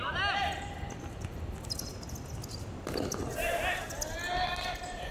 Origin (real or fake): real